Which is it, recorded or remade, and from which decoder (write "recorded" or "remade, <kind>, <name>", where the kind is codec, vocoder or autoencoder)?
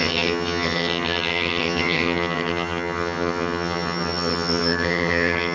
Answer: remade, vocoder, HiFi-GAN